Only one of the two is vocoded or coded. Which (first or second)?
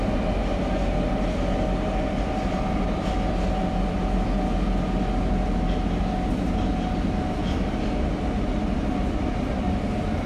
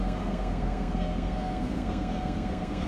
second